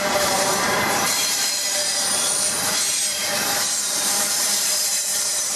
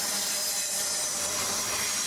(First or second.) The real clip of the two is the second